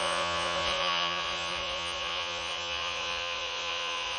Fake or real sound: fake